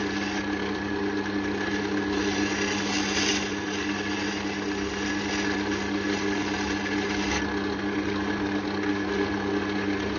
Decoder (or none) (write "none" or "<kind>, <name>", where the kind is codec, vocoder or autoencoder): none